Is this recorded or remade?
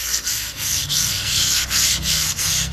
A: remade